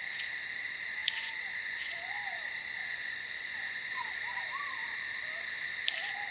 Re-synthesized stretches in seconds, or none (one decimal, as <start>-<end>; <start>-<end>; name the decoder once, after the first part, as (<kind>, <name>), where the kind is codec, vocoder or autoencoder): 1.0-2.4 (vocoder, Vocos); 2.8-4.2